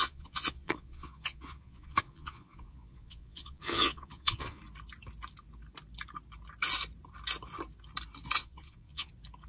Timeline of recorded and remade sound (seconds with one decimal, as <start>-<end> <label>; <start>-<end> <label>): 0.0-4.6 remade; 4.6-8.4 recorded; 8.4-9.1 remade; 9.1-9.5 recorded